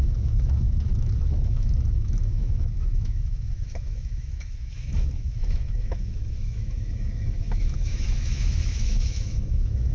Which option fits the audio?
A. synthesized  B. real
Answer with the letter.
A